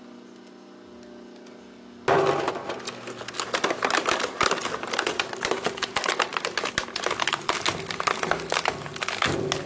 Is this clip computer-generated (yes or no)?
no